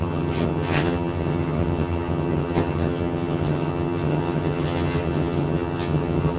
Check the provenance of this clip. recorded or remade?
remade